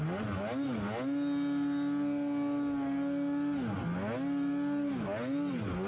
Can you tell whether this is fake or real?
real